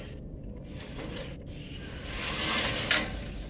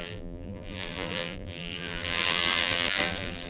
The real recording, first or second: first